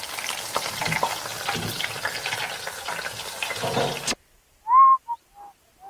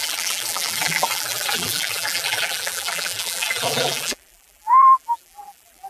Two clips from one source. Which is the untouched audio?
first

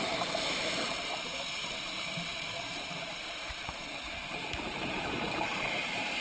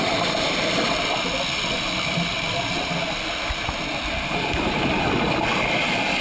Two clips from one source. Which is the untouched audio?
second